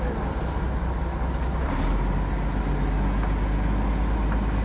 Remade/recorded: recorded